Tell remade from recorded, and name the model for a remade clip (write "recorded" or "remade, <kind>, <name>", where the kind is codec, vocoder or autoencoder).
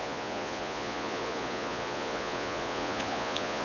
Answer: remade, vocoder, Vocos